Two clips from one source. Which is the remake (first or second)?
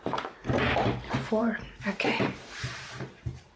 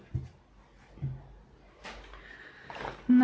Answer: first